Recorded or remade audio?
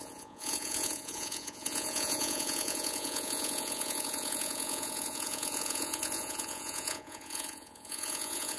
remade